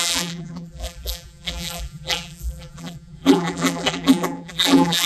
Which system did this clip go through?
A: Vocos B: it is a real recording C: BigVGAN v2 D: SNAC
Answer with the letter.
C